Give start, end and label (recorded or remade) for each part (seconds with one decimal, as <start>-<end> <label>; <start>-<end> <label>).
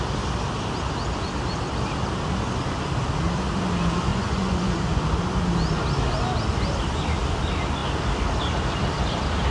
0.0-4.1 recorded; 4.1-5.0 remade; 5.0-9.5 recorded